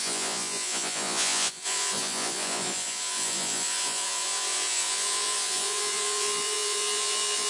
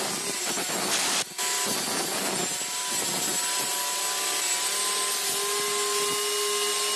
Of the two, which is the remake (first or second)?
first